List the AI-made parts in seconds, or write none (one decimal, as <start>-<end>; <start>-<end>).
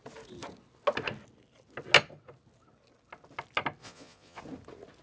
3.8-4.4